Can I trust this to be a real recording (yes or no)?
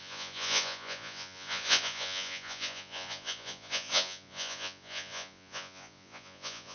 no